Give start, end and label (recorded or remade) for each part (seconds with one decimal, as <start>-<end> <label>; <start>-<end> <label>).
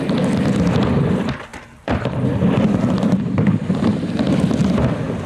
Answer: 0.0-1.5 recorded; 1.5-4.7 remade; 4.7-5.3 recorded